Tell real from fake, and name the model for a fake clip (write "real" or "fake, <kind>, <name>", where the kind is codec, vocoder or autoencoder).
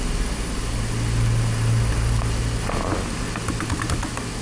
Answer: real